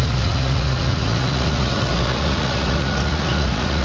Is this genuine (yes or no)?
no